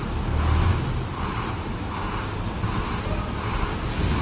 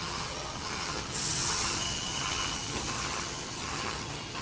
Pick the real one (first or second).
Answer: first